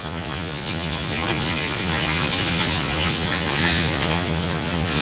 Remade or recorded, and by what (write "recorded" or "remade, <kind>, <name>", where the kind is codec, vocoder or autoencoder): remade, vocoder, Vocos